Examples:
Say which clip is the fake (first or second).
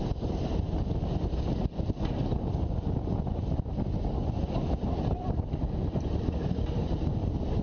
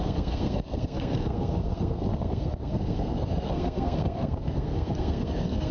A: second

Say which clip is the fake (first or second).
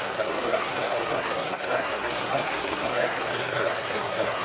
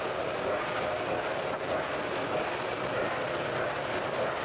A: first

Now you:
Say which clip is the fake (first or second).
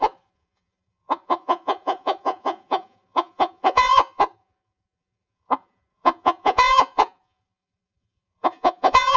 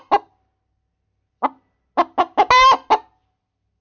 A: first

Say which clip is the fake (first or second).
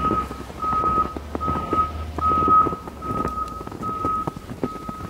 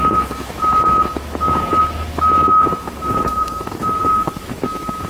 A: second